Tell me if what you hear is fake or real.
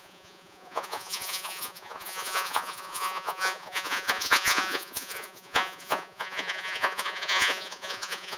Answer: fake